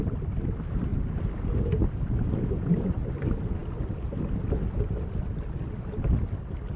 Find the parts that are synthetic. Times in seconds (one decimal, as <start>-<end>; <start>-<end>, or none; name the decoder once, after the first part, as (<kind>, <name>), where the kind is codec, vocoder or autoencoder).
none